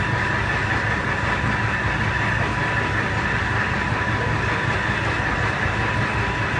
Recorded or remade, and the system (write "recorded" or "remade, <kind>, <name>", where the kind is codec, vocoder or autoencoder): recorded